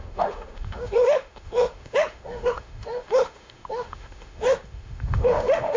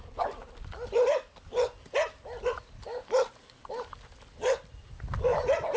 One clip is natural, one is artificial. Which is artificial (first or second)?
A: first